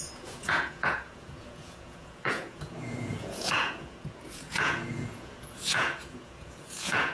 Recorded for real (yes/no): no